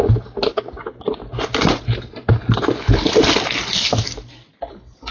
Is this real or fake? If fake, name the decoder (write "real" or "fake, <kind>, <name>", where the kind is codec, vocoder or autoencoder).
real